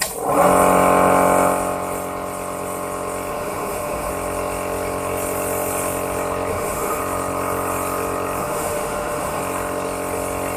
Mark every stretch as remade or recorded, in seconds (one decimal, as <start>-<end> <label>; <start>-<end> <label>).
0.0-3.3 recorded; 3.3-4.1 remade; 4.1-6.5 recorded; 6.5-7.0 remade; 7.0-8.4 recorded; 8.4-9.4 remade; 9.4-10.6 recorded